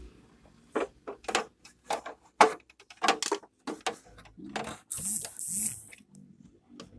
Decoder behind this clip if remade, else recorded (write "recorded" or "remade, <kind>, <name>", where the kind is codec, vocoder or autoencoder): recorded